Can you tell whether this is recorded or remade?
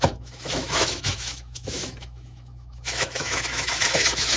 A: remade